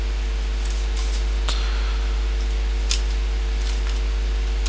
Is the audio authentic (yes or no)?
yes